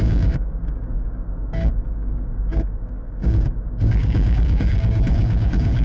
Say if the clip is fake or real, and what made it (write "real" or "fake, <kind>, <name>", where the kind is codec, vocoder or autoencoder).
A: fake, codec, DAC